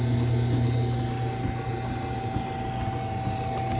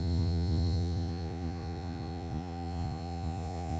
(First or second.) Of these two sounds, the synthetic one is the second